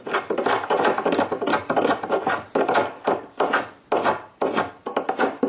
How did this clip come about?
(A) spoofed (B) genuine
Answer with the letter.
B